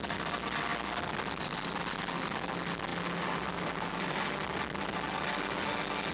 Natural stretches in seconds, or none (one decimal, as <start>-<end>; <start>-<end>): 0.0-6.1